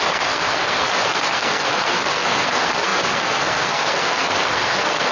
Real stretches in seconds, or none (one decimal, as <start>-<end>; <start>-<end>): none